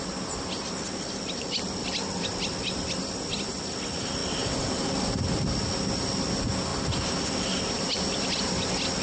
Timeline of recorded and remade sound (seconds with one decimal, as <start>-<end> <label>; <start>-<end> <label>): 0.0-9.0 recorded